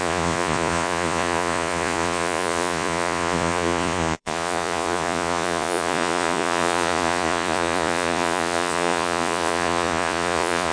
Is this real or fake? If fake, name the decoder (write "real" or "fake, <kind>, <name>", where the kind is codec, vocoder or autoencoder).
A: fake, vocoder, Vocos